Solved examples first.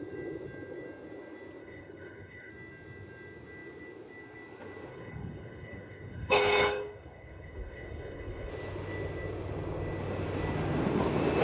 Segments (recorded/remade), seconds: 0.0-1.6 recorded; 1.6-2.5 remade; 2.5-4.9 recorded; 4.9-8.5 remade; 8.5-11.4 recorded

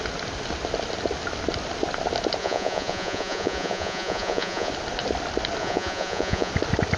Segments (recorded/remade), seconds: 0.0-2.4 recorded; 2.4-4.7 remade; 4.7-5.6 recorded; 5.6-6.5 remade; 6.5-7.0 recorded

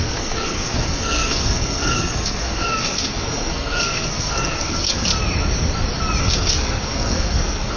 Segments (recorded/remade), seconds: 0.0-5.1 remade; 5.1-6.2 recorded; 6.2-7.8 remade

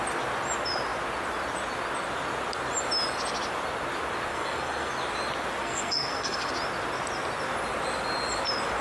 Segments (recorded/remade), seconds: 0.0-4.3 recorded; 4.3-4.9 remade; 4.9-5.6 recorded; 5.6-6.5 remade; 6.5-8.8 recorded